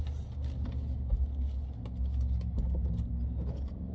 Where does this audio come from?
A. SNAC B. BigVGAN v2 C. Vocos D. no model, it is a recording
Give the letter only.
D